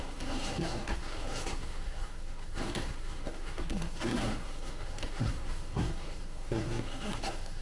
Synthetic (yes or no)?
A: yes